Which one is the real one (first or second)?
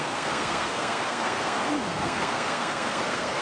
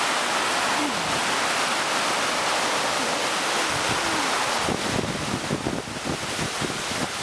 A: second